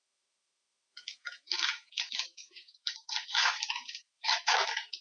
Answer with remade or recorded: remade